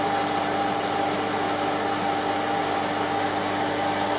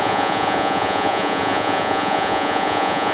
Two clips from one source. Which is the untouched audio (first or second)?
first